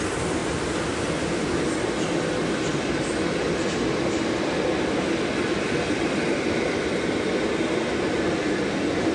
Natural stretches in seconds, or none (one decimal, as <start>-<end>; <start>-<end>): 0.0-9.1